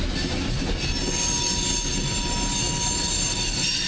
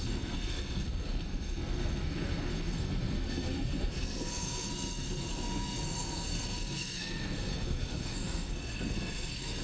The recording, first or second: first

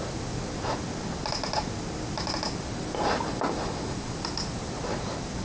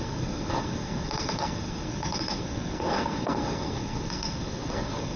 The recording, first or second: first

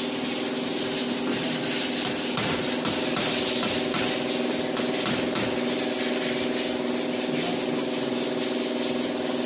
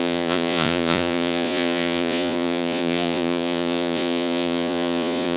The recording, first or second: first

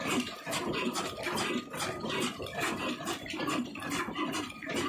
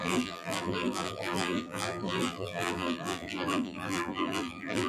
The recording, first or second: first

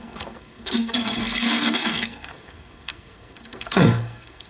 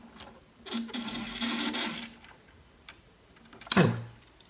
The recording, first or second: second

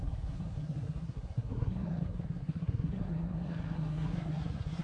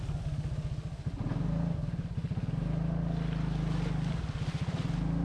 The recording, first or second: second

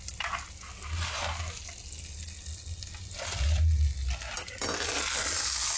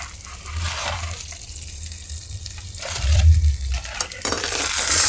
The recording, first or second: first